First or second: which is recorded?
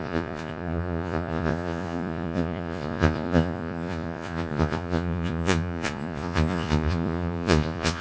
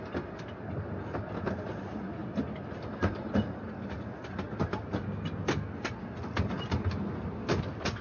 second